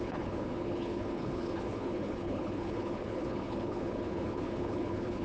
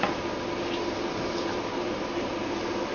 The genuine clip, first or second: second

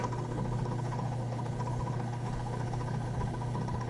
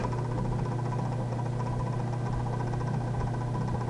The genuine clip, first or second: second